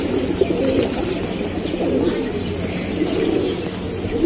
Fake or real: real